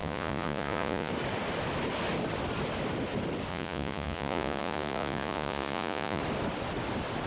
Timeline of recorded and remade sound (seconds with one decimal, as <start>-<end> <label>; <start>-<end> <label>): 0.0-1.1 remade; 1.1-3.5 recorded; 3.5-6.2 remade; 6.2-7.3 recorded